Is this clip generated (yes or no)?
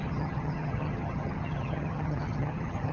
yes